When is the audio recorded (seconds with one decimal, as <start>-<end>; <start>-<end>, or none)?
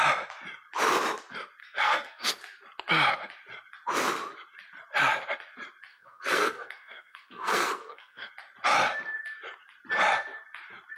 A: 0.0-1.6; 2.3-5.9; 8.3-11.0